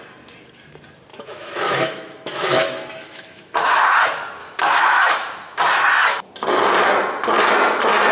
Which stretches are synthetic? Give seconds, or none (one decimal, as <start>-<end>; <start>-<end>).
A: 1.1-3.8; 4.4-5.6